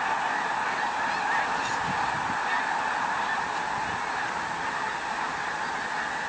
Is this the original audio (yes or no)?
yes